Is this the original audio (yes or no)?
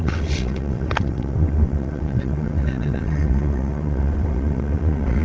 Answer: no